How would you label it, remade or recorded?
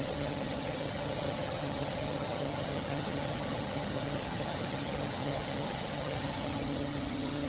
remade